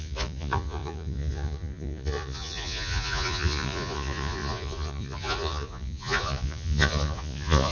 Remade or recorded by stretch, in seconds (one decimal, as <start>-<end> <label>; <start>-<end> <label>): 0.0-7.7 remade